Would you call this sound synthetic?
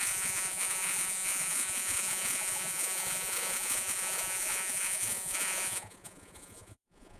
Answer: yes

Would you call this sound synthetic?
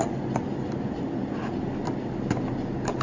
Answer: no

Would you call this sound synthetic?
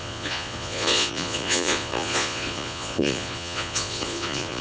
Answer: yes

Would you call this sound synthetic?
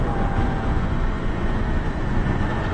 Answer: yes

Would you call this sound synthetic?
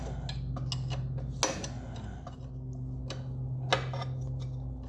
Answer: no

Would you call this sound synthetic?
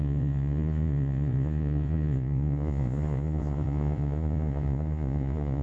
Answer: yes